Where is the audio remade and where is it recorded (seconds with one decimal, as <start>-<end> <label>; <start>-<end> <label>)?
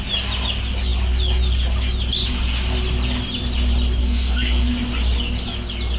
0.0-4.0 recorded; 4.0-4.7 remade; 4.7-6.0 recorded